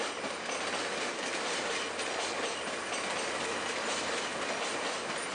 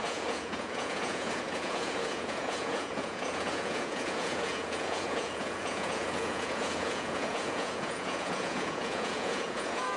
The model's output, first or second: second